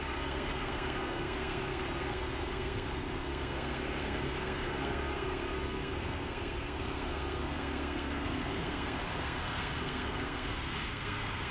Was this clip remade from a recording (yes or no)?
yes